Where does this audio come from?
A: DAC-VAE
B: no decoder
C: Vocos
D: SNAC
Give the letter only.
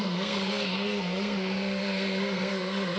D